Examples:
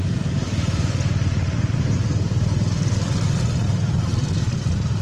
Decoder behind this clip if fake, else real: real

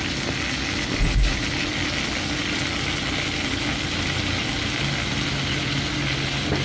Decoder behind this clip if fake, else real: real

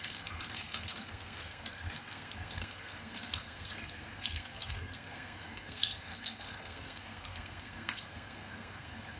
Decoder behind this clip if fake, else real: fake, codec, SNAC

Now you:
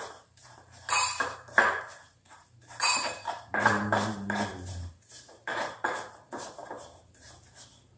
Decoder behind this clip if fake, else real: fake, vocoder, BigVGAN v2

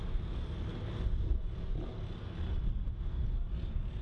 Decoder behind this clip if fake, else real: real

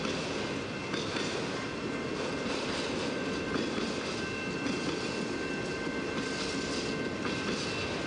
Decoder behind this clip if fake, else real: real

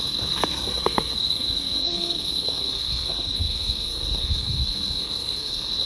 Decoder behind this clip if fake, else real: fake, codec, SNAC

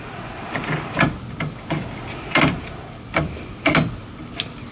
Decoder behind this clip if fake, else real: real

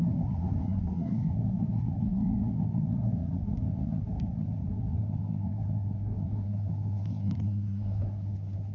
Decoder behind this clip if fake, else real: fake, codec, SNAC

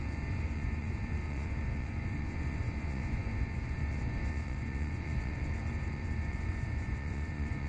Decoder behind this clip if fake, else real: fake, vocoder, Vocos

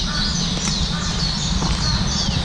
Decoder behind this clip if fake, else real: real